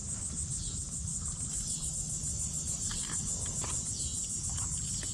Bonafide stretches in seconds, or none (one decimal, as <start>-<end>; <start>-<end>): 0.0-1.1; 1.9-2.3; 3.9-5.1